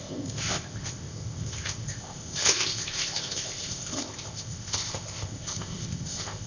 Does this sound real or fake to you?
fake